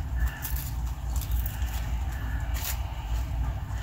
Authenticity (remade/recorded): recorded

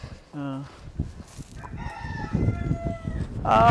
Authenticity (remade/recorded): recorded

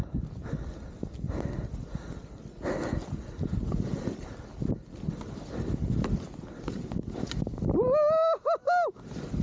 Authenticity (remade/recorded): recorded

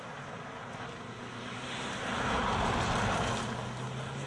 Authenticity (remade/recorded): recorded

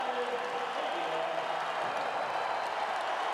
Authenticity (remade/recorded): recorded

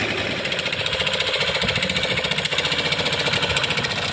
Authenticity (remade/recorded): recorded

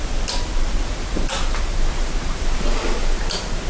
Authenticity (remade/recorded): recorded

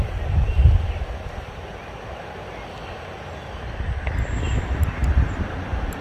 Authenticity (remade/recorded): recorded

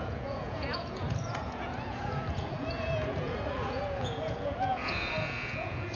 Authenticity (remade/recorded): remade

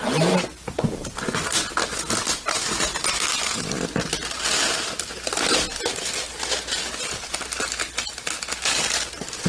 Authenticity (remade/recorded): recorded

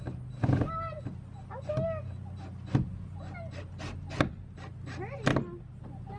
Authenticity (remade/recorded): recorded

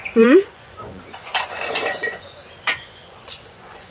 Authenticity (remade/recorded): remade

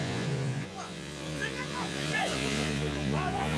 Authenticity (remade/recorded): remade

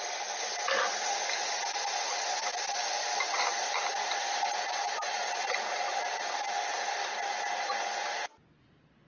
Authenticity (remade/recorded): recorded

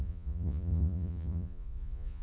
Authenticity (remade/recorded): remade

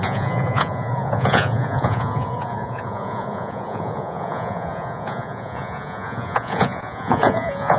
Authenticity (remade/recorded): remade